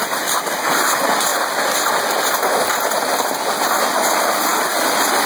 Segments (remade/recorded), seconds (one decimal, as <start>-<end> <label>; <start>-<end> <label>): 0.0-5.3 recorded